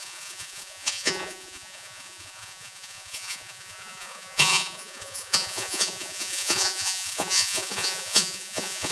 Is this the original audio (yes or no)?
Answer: no